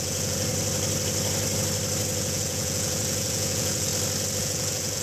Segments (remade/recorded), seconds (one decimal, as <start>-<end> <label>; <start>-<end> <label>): 0.0-0.5 remade; 0.5-2.2 recorded; 2.2-3.9 remade; 3.9-4.4 recorded; 4.4-5.0 remade